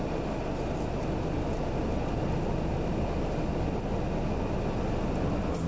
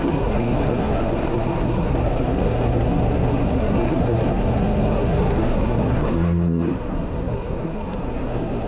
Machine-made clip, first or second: second